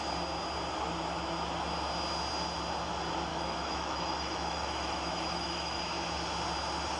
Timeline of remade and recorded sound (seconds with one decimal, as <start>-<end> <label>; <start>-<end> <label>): 0.0-3.3 recorded; 3.3-5.8 remade; 5.8-7.0 recorded